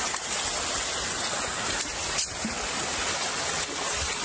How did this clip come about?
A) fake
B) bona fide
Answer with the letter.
B